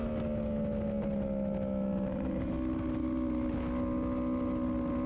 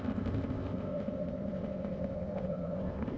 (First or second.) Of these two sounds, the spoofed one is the second